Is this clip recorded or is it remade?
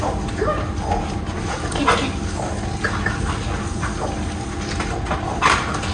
recorded